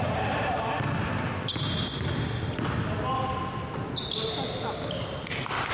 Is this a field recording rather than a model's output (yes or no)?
yes